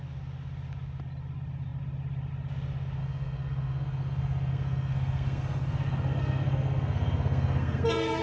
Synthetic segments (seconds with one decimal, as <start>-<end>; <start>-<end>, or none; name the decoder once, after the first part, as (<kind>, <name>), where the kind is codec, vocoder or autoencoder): 3.0-8.2 (codec, SNAC)